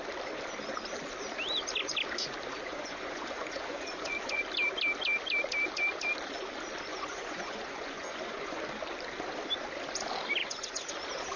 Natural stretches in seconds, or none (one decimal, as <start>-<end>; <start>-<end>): 0.0-2.7; 4.4-6.9; 8.6-10.4; 10.9-11.4